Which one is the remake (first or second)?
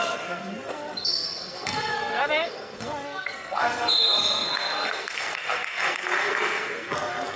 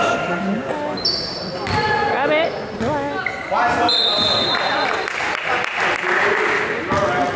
first